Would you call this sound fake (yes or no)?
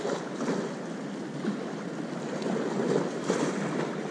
no